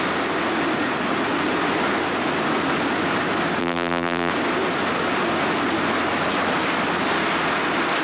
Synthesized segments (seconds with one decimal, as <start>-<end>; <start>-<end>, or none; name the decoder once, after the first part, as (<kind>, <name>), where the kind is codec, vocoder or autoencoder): 3.6-4.3 (vocoder, BigVGAN v2)